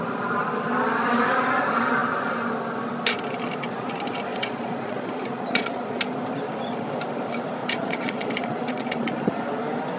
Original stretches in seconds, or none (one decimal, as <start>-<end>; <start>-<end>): 0.0-4.3; 6.0-7.6; 9.3-10.0